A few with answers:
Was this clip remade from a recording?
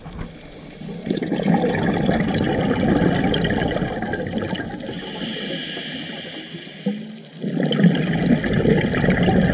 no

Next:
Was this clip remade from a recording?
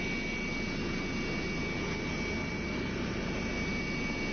no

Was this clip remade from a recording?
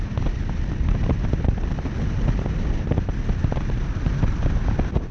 no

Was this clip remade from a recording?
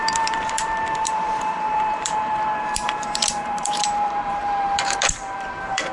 yes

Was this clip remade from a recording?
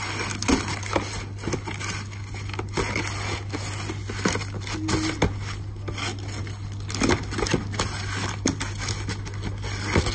no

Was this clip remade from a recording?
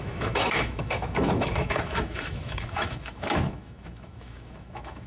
yes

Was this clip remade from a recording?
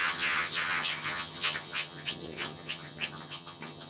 yes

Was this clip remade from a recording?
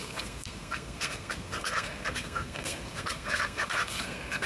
yes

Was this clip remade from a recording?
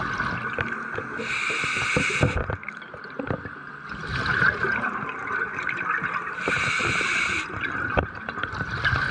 no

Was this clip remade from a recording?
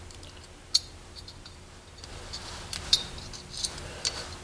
no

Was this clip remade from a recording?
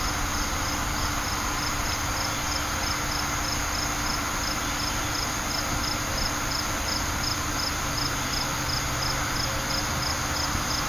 no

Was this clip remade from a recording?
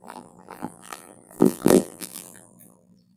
yes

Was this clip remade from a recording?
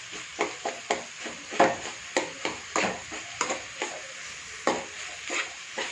no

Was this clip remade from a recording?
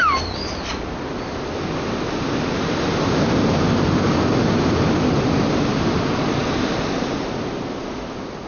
no